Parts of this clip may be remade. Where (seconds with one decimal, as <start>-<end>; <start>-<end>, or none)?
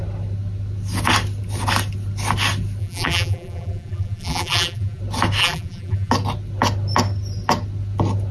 2.8-5.0; 5.4-6.1